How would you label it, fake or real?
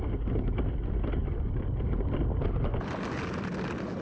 real